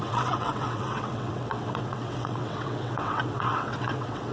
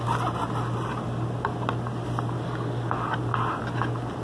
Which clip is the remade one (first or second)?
first